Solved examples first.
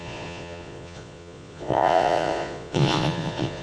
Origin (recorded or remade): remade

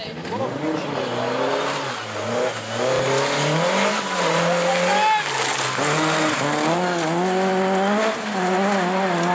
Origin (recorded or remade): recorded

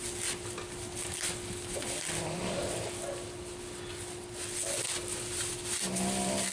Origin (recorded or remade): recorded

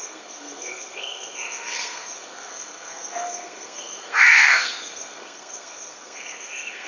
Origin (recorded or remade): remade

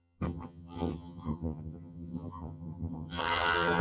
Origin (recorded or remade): remade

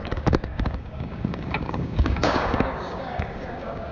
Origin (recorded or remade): remade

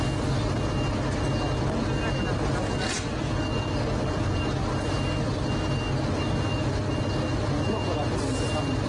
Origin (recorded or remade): recorded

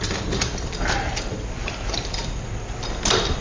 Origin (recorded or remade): remade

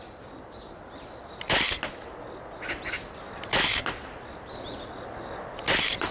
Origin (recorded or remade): recorded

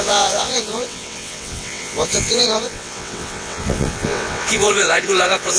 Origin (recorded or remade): remade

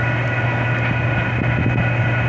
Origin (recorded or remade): recorded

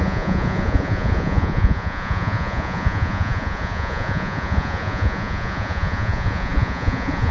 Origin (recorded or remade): remade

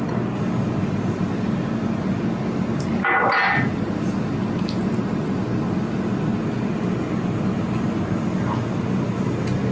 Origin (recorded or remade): recorded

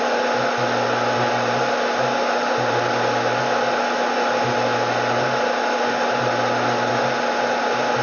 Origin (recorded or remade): recorded